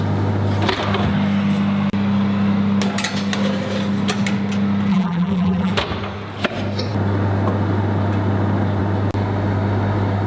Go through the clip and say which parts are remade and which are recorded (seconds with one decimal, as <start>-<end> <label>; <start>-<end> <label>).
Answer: 0.0-4.9 recorded; 4.9-5.7 remade; 5.7-10.3 recorded

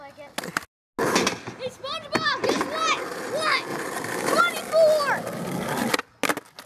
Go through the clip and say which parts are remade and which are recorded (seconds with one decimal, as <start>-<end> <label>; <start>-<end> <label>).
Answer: 0.0-3.7 recorded; 3.7-4.4 remade; 4.4-6.7 recorded

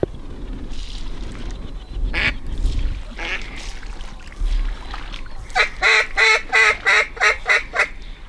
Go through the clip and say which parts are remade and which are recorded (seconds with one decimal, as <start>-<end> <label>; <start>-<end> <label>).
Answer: 0.0-8.3 recorded

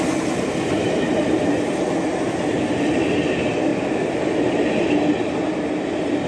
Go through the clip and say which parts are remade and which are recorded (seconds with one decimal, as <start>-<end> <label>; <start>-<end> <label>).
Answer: 0.0-6.3 recorded

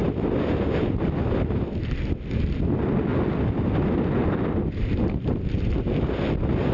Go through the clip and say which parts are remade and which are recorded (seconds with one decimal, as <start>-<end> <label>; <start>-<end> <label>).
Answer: 0.0-3.1 recorded; 3.1-5.3 remade; 5.3-6.7 recorded

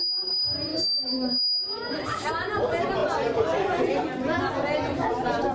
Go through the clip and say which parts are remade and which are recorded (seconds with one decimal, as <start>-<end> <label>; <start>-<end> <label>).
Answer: 0.0-5.5 recorded

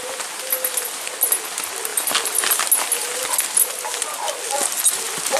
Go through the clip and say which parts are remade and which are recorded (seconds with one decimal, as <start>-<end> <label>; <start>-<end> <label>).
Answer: 0.0-5.4 recorded

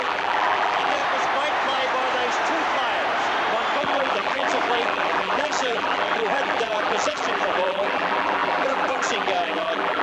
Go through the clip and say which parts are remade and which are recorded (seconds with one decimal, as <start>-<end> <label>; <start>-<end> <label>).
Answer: 0.0-1.0 remade; 1.0-3.8 recorded; 3.8-10.0 remade